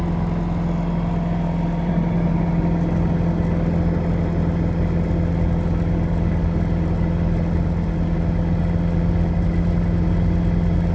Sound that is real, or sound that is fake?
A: real